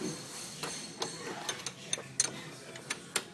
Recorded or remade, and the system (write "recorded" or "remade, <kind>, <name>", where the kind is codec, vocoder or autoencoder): recorded